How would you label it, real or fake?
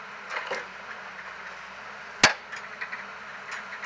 real